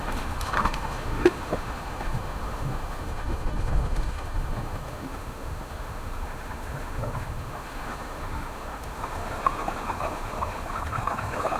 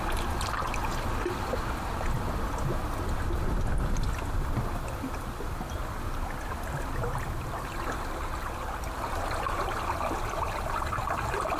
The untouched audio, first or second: second